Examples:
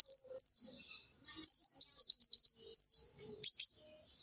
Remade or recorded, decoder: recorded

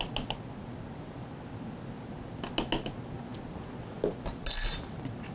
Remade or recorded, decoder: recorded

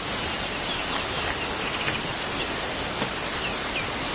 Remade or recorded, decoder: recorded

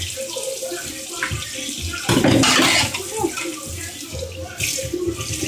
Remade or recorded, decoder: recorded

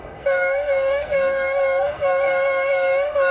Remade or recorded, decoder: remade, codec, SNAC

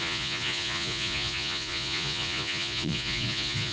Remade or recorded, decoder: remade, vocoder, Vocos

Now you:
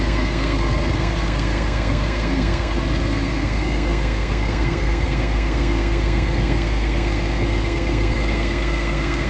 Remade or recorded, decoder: remade, codec, SNAC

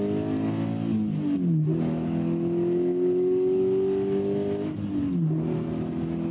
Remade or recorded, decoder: recorded